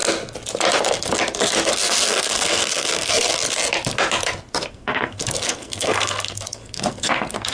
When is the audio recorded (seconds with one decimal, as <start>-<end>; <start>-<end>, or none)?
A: 0.0-1.7; 3.3-4.7

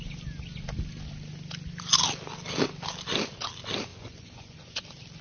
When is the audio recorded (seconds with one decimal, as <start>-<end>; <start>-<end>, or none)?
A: 0.0-3.9; 4.8-5.2

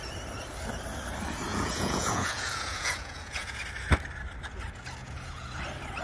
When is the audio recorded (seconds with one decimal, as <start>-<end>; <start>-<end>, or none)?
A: 0.0-1.5; 3.6-5.0; 5.6-6.0